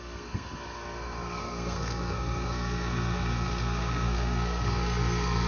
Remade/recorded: remade